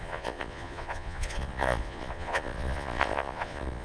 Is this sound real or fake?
fake